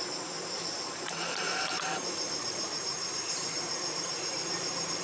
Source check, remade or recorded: remade